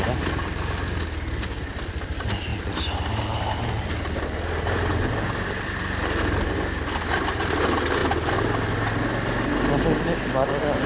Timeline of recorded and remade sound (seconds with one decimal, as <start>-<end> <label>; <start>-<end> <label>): 0.0-10.9 recorded